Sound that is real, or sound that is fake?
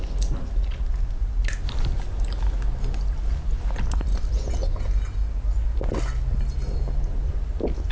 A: real